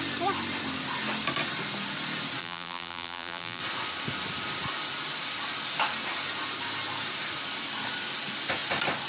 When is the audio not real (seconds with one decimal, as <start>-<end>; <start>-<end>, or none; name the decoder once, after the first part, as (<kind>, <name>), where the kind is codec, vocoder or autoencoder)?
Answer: 2.4-3.6 (vocoder, BigVGAN v2)